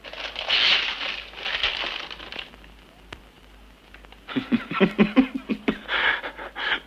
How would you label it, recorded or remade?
recorded